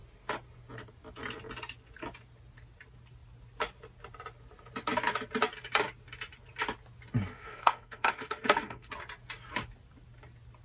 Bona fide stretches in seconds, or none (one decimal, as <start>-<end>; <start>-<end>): 0.0-7.3; 8.9-10.6